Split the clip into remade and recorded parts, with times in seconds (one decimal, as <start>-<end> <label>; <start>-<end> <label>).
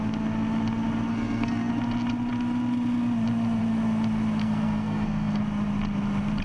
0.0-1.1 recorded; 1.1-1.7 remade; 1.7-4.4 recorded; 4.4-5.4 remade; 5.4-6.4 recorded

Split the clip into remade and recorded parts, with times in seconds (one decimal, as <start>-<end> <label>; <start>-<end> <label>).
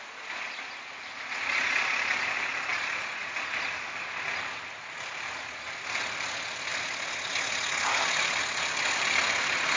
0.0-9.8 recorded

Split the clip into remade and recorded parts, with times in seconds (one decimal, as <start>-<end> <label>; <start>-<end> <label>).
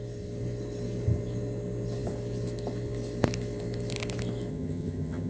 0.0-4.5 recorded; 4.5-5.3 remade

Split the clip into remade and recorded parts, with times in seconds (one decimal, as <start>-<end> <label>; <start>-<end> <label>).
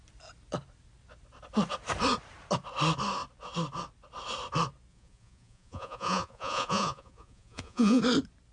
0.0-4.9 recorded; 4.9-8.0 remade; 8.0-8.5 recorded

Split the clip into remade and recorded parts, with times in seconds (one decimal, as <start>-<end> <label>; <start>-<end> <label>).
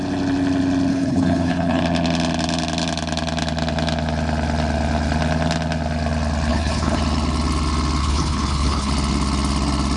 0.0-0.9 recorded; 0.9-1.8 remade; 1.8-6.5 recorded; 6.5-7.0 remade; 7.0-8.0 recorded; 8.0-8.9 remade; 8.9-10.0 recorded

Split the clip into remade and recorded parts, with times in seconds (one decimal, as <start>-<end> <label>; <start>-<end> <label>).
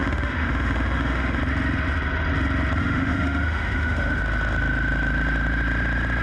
0.0-1.4 remade; 1.4-2.8 recorded; 2.8-4.2 remade; 4.2-6.2 recorded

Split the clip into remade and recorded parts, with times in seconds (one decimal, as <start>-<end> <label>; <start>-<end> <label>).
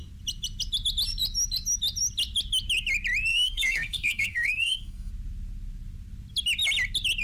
0.0-3.3 recorded; 3.3-5.1 remade; 5.1-7.2 recorded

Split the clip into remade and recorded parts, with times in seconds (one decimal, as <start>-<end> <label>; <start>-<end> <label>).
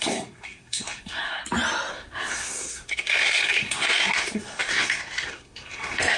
0.0-1.4 remade; 1.4-1.9 recorded; 1.9-6.2 remade